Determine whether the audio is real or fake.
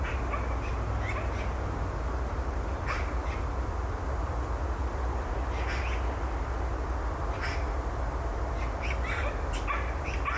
real